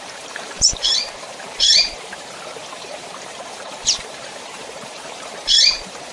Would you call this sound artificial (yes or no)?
yes